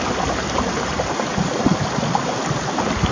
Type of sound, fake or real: real